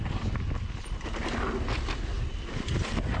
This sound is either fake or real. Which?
real